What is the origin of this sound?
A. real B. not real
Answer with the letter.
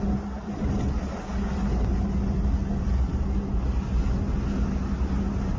A